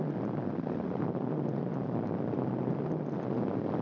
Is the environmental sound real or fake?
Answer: real